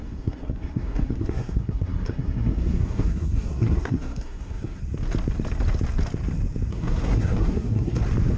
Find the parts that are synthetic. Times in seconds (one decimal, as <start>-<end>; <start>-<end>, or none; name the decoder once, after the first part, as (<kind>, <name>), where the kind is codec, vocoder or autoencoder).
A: 0.0-4.8 (codec, SNAC); 6.7-8.0